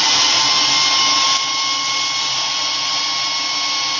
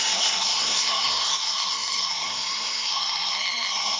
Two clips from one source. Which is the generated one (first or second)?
second